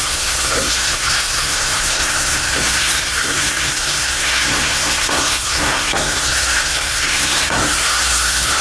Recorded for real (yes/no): no